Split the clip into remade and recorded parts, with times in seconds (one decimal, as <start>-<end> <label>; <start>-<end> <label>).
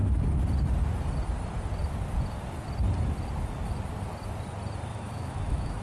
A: 0.0-4.9 recorded; 4.9-5.8 remade